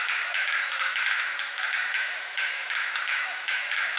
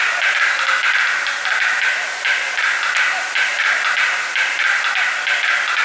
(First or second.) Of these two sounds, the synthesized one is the first